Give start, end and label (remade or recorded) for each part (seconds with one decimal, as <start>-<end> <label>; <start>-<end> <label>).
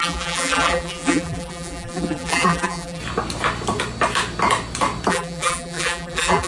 0.0-3.0 remade; 3.0-5.1 recorded; 5.1-6.5 remade